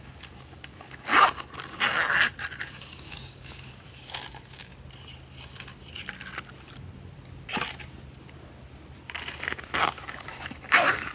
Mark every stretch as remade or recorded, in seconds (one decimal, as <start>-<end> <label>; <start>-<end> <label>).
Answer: 0.0-1.1 remade; 1.1-2.7 recorded; 2.7-4.7 remade; 4.7-9.8 recorded; 9.8-11.1 remade